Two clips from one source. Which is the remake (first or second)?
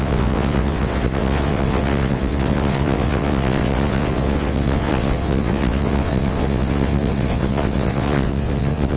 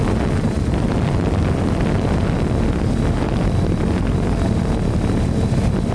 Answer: first